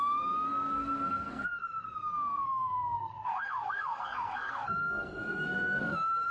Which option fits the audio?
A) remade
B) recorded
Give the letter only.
A